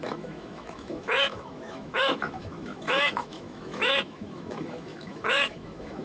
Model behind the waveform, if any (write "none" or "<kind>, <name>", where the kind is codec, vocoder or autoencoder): autoencoder, DAC-VAE